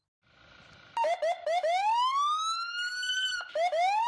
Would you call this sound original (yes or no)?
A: yes